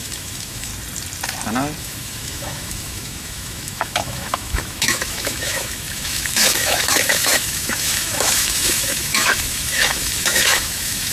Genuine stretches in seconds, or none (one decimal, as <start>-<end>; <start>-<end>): 0.7-1.8